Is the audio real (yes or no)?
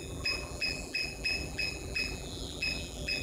no